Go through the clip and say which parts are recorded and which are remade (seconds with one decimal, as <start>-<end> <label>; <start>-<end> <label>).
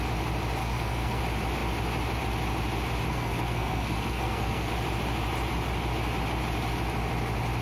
0.0-0.6 recorded; 0.6-1.2 remade; 1.2-3.1 recorded; 3.1-4.7 remade; 4.7-7.6 recorded